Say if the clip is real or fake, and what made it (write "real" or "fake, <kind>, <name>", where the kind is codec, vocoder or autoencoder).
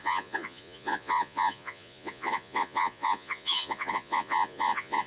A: fake, vocoder, Vocos